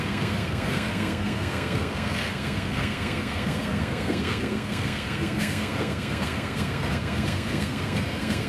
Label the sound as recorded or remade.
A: remade